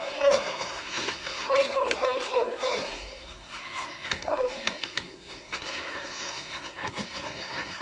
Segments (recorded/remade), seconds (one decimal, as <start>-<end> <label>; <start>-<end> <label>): 0.0-7.8 remade